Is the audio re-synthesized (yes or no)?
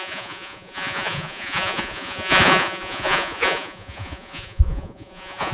yes